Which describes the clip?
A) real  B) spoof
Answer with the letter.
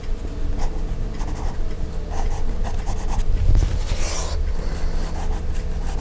A